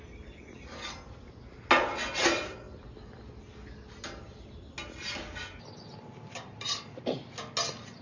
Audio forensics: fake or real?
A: real